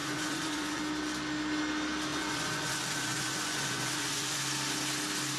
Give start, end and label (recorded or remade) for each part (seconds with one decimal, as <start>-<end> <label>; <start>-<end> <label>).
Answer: 0.0-0.8 remade; 0.8-2.1 recorded; 2.1-4.4 remade; 4.4-5.4 recorded